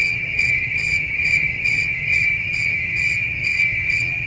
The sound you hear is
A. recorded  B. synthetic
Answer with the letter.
B